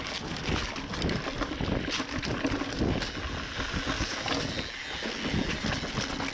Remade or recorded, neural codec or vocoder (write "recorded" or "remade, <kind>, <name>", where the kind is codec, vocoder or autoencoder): recorded